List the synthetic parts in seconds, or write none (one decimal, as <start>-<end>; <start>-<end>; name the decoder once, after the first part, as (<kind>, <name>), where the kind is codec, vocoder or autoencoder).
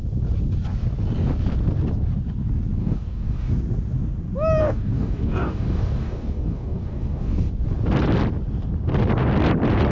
2.8-3.5 (codec, DAC); 4.6-7.5